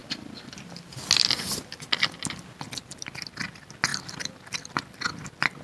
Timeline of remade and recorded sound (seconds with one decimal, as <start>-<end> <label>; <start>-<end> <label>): 0.0-5.6 recorded